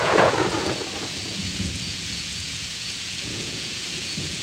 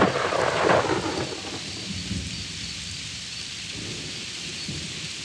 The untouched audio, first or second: second